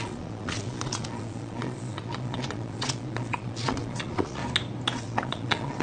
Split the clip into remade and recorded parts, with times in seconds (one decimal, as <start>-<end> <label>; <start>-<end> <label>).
0.0-4.4 remade; 4.4-5.0 recorded; 5.0-5.8 remade